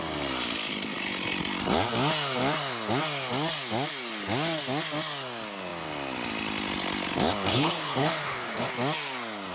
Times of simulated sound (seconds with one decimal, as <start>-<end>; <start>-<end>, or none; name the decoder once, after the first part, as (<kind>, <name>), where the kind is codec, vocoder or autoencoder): 7.5-8.7 (codec, HILCodec)